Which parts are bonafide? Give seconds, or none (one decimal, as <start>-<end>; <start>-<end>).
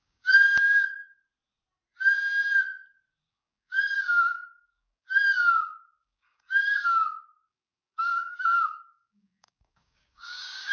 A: 1.0-3.3